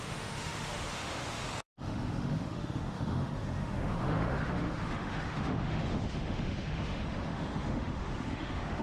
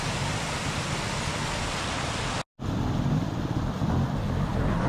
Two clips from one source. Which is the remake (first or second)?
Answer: first